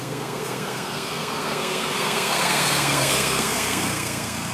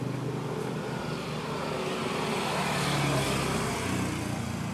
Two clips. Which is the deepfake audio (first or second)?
first